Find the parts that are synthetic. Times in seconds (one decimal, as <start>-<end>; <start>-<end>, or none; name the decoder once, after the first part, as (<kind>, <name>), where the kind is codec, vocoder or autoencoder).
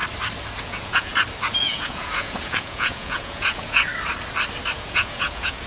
0.6-1.1 (vocoder, Vocos); 1.6-3.9; 4.7-5.7